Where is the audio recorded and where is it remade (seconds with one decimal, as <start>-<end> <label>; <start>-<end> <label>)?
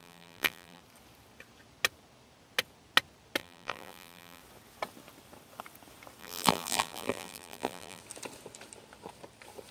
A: 0.0-0.8 remade; 0.8-3.4 recorded; 3.4-4.4 remade; 4.4-6.2 recorded; 6.2-8.0 remade; 8.0-9.7 recorded